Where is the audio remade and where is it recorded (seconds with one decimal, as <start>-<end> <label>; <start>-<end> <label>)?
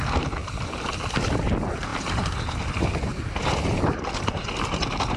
0.0-5.2 recorded